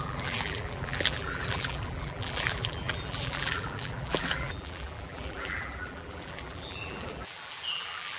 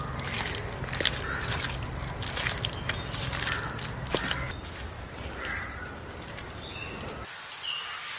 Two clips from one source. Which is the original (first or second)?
second